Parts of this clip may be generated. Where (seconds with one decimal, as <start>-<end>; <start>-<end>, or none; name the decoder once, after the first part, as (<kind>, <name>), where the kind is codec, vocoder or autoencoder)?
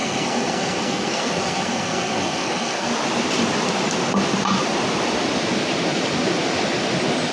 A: 0.0-2.9 (codec, SNAC)